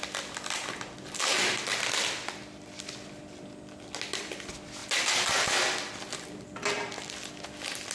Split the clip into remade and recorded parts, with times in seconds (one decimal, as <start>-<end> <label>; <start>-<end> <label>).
0.0-7.9 recorded